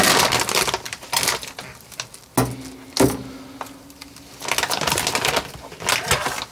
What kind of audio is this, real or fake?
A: real